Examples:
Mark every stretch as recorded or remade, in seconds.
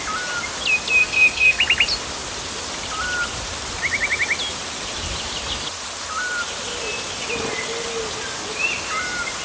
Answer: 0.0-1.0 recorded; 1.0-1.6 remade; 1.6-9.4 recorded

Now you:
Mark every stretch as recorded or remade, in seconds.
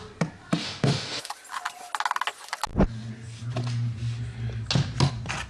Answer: 0.0-0.6 recorded; 0.6-1.3 remade; 1.3-5.5 recorded